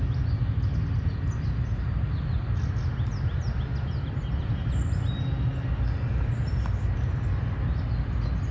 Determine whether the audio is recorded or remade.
recorded